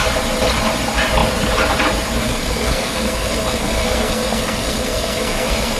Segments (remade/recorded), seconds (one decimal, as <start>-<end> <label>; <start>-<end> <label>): 0.0-2.2 recorded; 2.2-5.8 remade